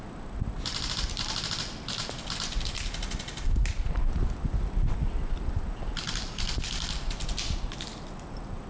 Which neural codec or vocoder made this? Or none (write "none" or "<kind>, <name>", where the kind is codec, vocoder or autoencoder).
none